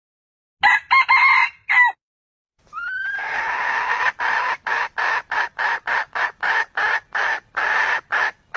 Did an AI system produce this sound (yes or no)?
no